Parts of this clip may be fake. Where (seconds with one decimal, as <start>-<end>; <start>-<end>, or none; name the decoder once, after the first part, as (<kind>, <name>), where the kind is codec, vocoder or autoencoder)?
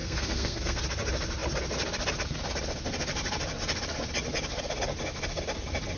0.0-0.8 (codec, SNAC)